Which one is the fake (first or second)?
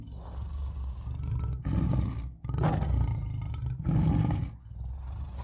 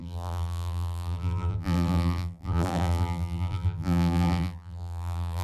second